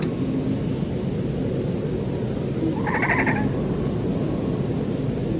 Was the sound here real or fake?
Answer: real